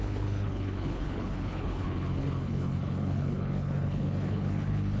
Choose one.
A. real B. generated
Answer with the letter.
B